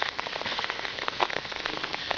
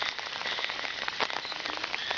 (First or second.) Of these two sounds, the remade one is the first